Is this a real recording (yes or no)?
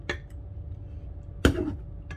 yes